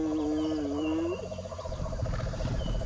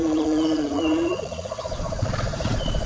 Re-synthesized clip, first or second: second